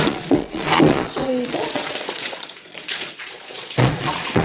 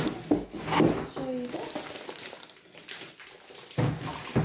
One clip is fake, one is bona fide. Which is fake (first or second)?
first